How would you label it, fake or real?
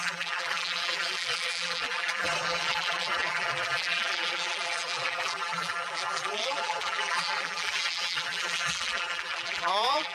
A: fake